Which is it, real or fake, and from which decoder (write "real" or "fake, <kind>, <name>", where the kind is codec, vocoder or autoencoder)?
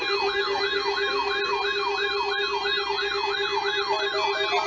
real